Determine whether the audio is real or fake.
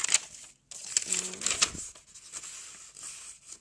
real